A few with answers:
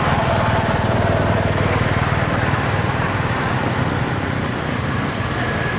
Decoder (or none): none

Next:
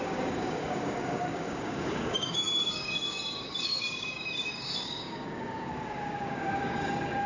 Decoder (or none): codec, DAC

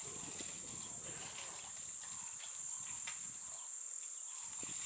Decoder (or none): none